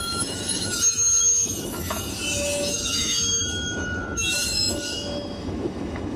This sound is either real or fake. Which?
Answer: fake